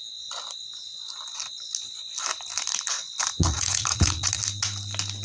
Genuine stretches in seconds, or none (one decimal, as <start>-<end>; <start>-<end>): 0.0-3.2; 4.4-5.2